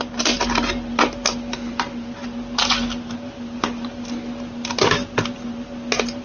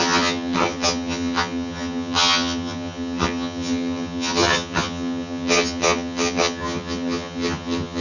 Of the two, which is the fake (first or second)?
second